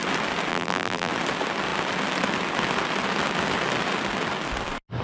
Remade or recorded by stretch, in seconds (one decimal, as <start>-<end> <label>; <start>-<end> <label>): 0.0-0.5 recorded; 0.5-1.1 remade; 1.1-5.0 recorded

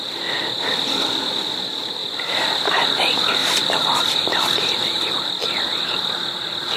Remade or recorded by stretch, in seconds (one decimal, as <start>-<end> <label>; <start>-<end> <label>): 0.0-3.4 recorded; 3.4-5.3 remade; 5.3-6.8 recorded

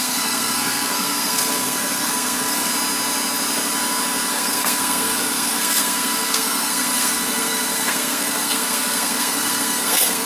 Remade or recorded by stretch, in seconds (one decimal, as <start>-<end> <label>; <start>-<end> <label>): 0.0-2.7 remade; 2.7-4.3 recorded; 4.3-10.3 remade

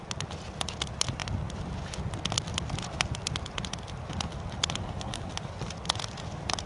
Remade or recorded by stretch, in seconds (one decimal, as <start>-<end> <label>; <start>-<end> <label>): 0.0-6.7 recorded

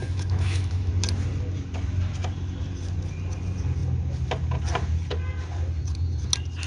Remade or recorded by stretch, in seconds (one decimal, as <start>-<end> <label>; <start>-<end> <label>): 0.0-0.9 remade; 0.9-6.7 recorded